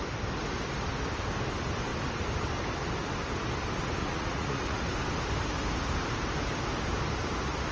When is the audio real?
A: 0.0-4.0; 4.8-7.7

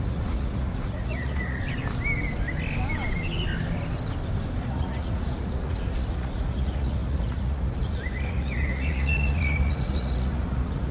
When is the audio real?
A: 1.6-4.6

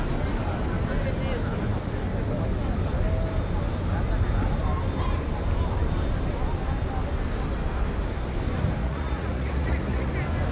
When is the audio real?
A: 0.0-8.8; 10.1-10.5

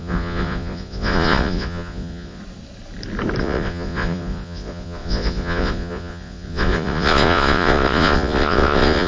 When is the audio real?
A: 2.4-3.4